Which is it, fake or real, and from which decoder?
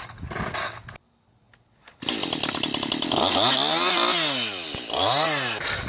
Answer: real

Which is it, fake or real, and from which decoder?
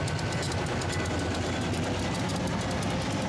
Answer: real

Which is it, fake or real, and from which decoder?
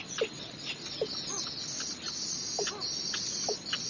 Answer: real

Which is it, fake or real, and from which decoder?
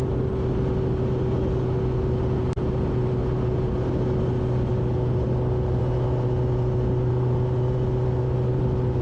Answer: real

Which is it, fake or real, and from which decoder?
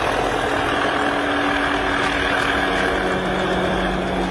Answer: real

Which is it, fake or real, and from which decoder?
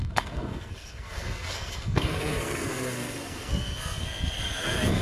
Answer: fake, codec, SNAC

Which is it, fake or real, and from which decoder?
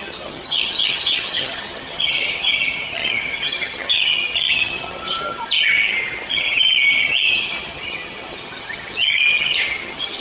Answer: fake, vocoder, HiFi-GAN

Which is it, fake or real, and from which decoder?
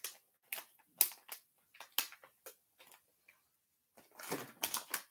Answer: real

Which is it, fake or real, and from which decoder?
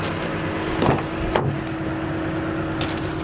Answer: real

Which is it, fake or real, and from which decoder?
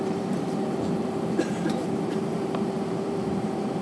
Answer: fake, vocoder, BigVGAN v2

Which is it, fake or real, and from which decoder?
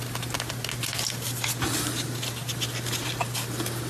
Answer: real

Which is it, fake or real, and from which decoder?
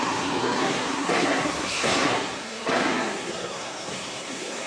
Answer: fake, codec, SNAC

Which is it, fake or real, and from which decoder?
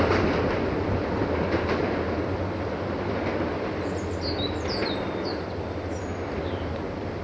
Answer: real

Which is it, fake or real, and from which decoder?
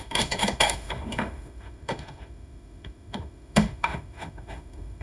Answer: fake, autoencoder, DAC-VAE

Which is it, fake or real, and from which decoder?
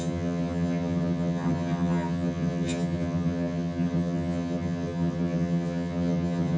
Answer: fake, vocoder, HiFi-GAN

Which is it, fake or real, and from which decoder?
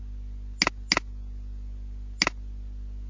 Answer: real